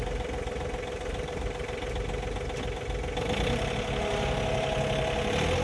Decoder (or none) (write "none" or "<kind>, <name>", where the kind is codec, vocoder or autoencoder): none